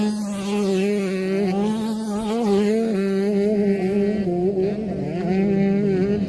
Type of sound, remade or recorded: recorded